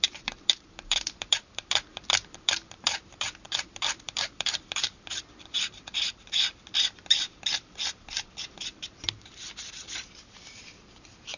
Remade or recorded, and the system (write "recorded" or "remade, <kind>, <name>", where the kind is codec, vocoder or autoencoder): remade, vocoder, BigVGAN v2